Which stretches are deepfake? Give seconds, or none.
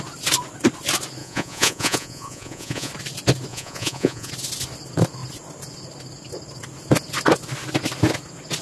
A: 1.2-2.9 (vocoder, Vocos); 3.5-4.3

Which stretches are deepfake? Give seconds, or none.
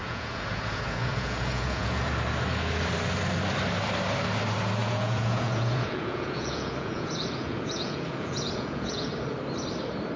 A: 0.0-2.1 (vocoder, Vocos); 4.8-9.1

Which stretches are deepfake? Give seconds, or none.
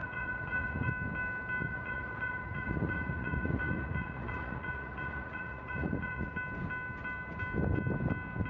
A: 0.0-0.9 (vocoder, Vocos); 1.6-6.3